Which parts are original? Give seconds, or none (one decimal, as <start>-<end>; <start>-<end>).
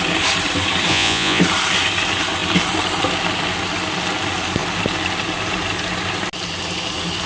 0.0-0.9; 1.4-7.3